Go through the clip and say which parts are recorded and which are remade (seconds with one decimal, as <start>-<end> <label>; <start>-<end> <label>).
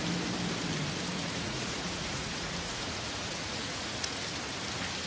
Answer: 0.0-1.1 recorded; 1.1-4.2 remade; 4.2-5.1 recorded